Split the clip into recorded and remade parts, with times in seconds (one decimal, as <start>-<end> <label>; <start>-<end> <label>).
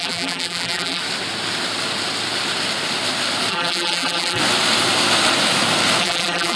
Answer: 0.0-1.0 remade; 1.0-3.5 recorded; 3.5-4.4 remade; 4.4-6.0 recorded; 6.0-6.6 remade